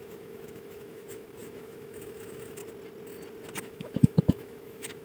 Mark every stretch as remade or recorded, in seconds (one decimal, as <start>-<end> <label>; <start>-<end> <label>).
0.0-2.6 remade; 2.6-3.6 recorded; 3.6-5.0 remade